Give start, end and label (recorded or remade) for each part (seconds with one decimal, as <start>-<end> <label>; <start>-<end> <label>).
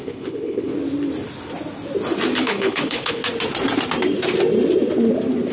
0.0-0.7 remade; 0.7-2.4 recorded; 2.4-3.2 remade; 3.2-5.5 recorded